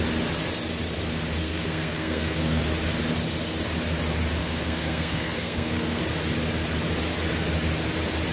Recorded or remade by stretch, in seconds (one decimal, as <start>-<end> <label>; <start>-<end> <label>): 0.0-1.4 recorded; 1.4-2.6 remade; 2.6-4.4 recorded; 4.4-6.0 remade; 6.0-8.3 recorded